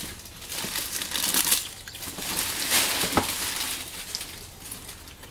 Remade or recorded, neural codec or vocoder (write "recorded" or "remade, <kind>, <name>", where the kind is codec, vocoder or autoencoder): recorded